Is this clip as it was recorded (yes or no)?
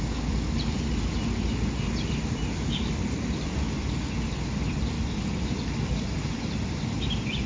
yes